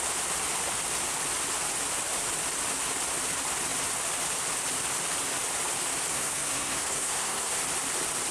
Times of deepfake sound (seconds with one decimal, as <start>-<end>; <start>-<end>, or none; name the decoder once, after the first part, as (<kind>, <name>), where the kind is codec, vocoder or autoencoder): 6.1-7.6 (codec, SNAC)